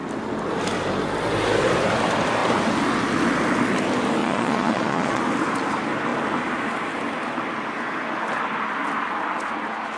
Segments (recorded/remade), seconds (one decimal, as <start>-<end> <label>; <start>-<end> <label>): 0.0-4.2 recorded; 4.2-5.2 remade; 5.2-10.0 recorded